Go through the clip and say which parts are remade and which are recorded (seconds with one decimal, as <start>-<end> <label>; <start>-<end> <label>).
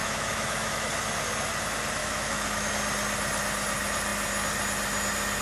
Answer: 0.0-0.9 remade; 0.9-2.0 recorded; 2.0-2.7 remade; 2.7-5.4 recorded